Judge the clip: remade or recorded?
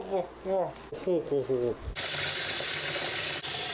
recorded